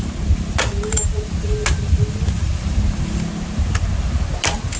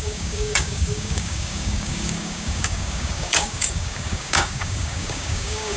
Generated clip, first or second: second